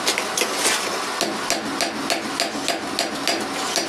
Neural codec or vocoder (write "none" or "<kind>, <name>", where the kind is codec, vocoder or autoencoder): none